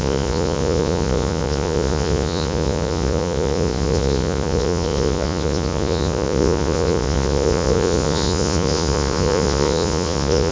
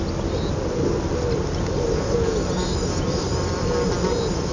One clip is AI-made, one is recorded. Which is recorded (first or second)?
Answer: second